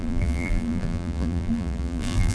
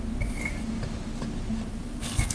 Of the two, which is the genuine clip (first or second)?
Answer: second